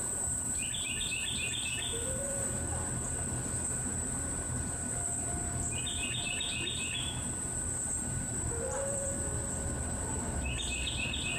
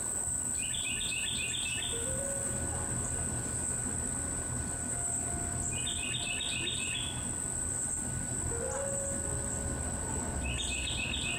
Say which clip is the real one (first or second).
second